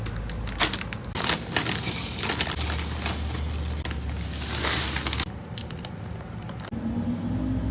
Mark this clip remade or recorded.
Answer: recorded